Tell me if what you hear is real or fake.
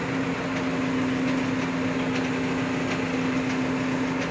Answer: real